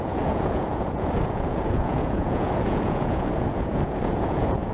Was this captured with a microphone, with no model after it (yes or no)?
no